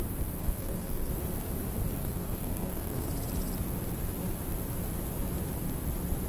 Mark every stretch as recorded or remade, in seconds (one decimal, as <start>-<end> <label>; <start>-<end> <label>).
0.0-0.4 recorded; 0.4-1.1 remade; 1.1-2.0 recorded; 2.0-3.1 remade; 3.1-6.3 recorded